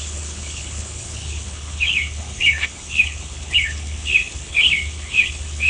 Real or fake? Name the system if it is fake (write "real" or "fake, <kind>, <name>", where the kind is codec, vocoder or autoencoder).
fake, codec, HILCodec